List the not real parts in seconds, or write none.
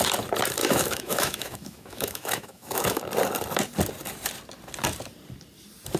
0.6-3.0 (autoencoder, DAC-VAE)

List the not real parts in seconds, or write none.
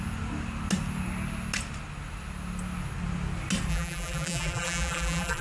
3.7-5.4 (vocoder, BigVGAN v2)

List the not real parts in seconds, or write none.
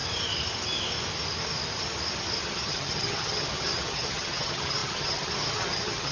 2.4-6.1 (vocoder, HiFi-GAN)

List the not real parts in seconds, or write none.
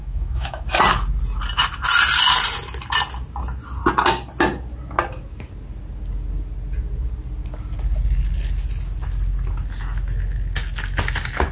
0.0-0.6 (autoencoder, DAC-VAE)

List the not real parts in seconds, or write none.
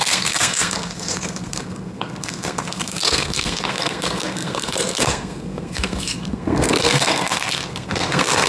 0.0-8.5 (codec, SNAC)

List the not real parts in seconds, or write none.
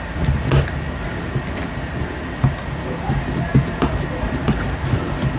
none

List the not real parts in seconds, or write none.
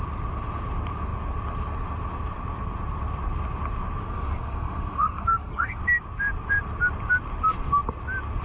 4.0-5.8 (codec, SNAC)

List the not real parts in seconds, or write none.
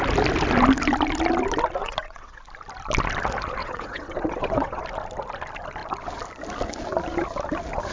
1.8-2.4 (vocoder, WaveNeXt); 3.6-4.8